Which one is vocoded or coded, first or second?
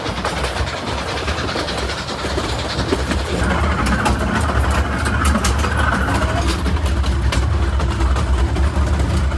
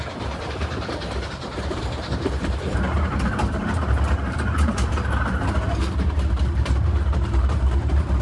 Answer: second